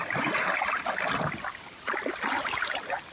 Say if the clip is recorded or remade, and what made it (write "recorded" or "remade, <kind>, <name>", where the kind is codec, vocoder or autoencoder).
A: recorded